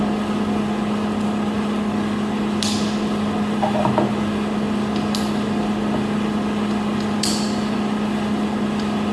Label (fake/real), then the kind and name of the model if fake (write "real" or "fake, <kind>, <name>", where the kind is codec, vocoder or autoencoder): real